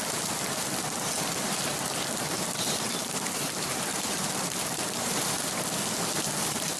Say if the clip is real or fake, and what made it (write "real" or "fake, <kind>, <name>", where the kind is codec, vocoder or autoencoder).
fake, vocoder, BigVGAN v2